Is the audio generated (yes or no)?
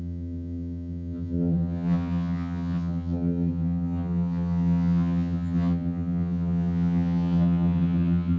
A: yes